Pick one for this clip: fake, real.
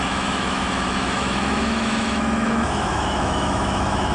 fake